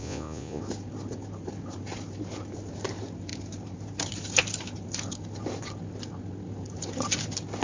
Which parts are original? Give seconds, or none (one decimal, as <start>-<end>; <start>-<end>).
0.6-7.6